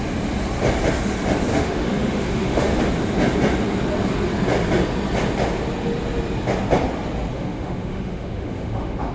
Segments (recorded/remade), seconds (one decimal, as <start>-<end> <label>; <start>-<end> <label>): 0.0-1.5 recorded; 1.5-2.8 remade; 2.8-7.3 recorded; 7.3-9.1 remade